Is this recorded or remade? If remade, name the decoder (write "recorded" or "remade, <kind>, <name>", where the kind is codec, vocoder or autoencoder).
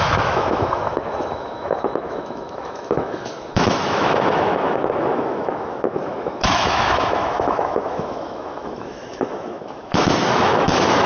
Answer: remade, autoencoder, DAC-VAE